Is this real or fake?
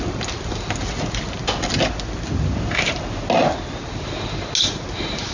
real